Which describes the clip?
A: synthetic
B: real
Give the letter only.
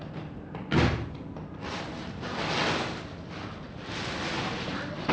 B